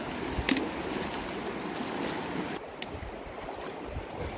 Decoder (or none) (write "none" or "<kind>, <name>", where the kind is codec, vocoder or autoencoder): none